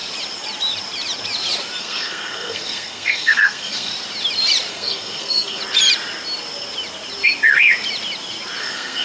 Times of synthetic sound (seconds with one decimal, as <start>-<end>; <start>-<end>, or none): 1.8-3.9; 4.7-5.6; 8.6-9.0